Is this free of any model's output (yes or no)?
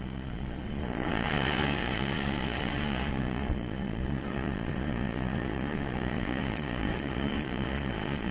no